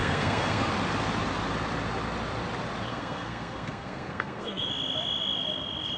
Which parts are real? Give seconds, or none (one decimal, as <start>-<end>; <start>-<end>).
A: 0.7-2.9; 4.7-6.0